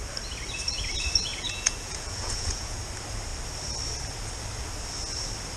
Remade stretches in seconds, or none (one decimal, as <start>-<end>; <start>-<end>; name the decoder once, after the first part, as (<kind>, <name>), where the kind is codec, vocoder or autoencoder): 1.3-2.8 (vocoder, Vocos)